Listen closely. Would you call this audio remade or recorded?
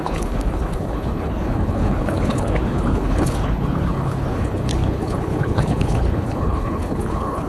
remade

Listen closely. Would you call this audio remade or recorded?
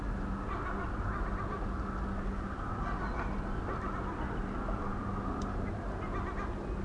recorded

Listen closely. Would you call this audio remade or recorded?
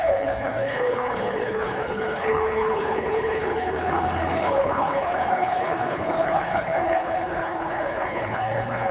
remade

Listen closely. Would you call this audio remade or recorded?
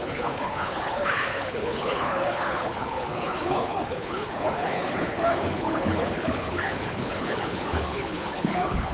remade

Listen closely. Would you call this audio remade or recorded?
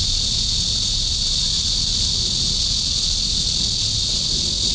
recorded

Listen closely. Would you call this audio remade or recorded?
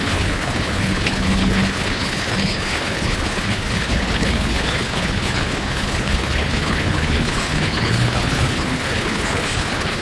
remade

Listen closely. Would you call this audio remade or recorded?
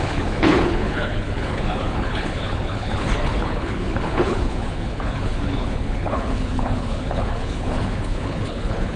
remade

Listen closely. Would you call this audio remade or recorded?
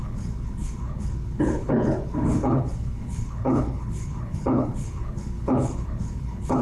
remade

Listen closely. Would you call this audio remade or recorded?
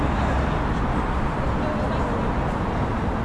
recorded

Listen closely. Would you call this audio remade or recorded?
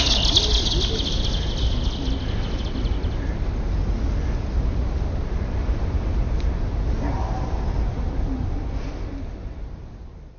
recorded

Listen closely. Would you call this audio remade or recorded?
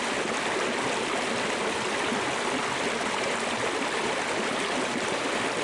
recorded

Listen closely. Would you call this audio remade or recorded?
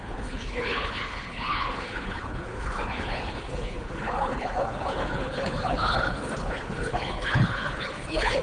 remade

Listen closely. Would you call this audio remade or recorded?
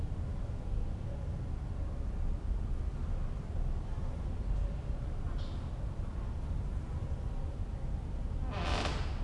recorded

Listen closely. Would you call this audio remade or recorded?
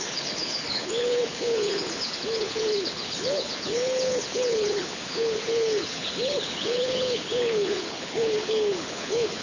remade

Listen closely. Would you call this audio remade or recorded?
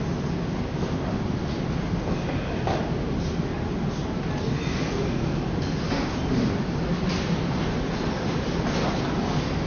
recorded